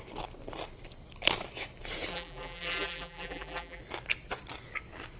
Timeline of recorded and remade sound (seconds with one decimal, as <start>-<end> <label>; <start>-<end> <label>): 0.0-2.1 recorded; 2.1-3.8 remade; 3.8-5.2 recorded

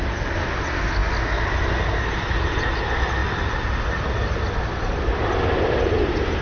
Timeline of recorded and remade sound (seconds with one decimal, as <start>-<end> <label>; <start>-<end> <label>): 0.0-3.2 recorded; 3.2-5.7 remade; 5.7-6.4 recorded